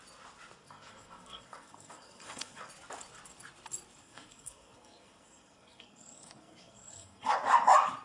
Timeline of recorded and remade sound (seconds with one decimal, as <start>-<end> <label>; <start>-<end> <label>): 0.0-0.6 recorded; 0.6-2.7 remade; 2.7-4.0 recorded; 4.0-7.3 remade; 7.3-8.0 recorded